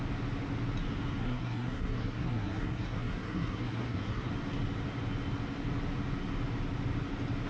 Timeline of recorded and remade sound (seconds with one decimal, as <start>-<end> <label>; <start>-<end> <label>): 0.0-1.2 recorded; 1.2-4.3 remade; 4.3-7.5 recorded